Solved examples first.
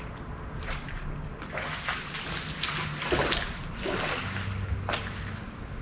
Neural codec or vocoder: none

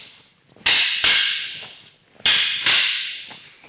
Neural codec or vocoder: none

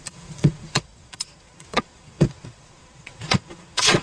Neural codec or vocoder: vocoder, Vocos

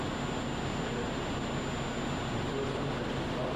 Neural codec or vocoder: none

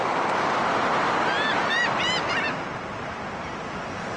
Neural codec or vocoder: none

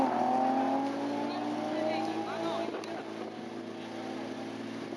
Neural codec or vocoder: none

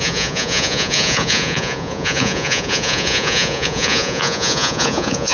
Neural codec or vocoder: vocoder, Vocos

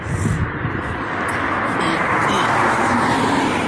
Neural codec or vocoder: none